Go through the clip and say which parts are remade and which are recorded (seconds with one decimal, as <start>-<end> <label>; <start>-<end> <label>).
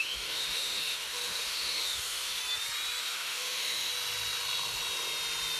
0.0-2.4 remade; 2.4-3.0 recorded; 3.0-3.9 remade; 3.9-5.6 recorded